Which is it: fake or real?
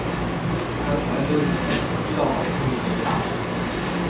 real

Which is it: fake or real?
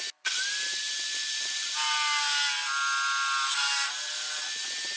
real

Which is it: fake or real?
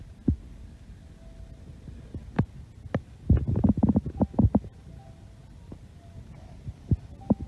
real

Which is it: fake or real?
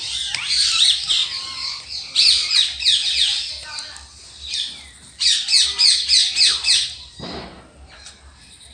real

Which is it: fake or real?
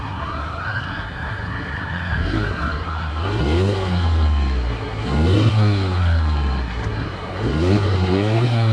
fake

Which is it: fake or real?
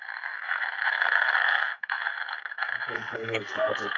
fake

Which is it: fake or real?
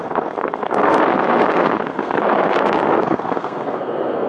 fake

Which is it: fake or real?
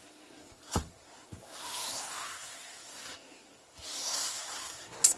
fake